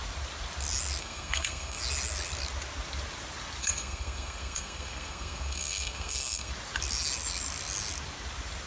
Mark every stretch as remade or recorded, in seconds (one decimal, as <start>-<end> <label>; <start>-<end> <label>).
0.0-1.0 recorded; 1.0-1.8 remade; 1.8-3.6 recorded; 3.6-6.5 remade; 6.5-8.7 recorded